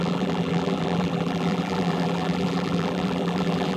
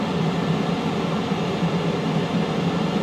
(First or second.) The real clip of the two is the second